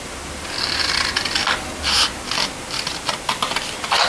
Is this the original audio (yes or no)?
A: yes